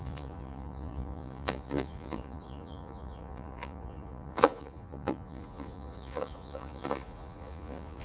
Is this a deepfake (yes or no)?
yes